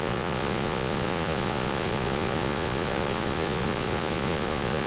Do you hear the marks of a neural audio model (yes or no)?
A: yes